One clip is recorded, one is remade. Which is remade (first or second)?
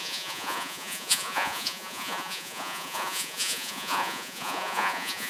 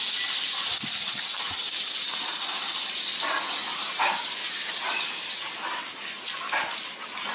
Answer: first